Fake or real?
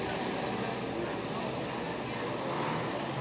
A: real